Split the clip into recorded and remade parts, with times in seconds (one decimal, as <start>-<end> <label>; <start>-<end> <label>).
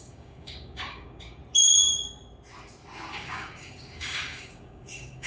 0.0-1.4 remade; 1.4-3.1 recorded; 3.1-5.3 remade